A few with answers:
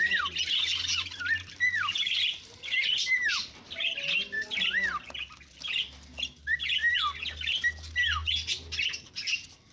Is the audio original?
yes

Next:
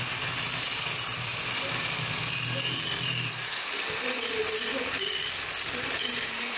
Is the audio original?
yes